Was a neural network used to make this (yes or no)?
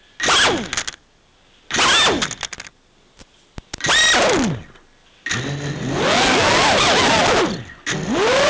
no